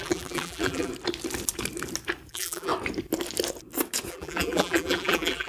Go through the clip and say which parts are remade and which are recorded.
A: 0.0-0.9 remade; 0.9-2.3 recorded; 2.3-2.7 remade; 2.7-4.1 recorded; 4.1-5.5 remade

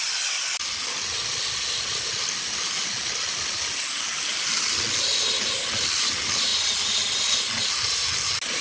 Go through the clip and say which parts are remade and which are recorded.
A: 0.0-8.6 recorded

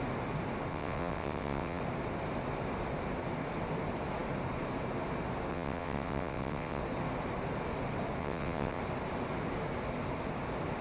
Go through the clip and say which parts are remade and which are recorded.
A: 0.0-0.7 recorded; 0.7-1.8 remade; 1.8-5.5 recorded; 5.5-6.8 remade; 6.8-8.2 recorded; 8.2-8.8 remade; 8.8-10.8 recorded